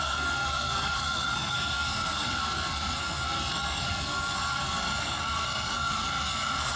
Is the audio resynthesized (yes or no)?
yes